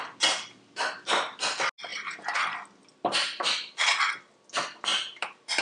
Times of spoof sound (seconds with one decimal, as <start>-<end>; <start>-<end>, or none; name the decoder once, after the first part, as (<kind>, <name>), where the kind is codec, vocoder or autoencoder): 4.9-5.6 (vocoder, BigVGAN v2)